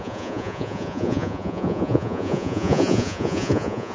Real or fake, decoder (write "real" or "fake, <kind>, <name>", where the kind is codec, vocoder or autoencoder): fake, vocoder, Vocos